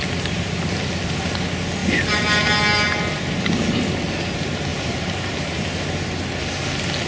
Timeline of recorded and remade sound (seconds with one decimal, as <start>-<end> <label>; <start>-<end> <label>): 0.0-4.7 recorded; 4.7-5.8 remade; 5.8-7.1 recorded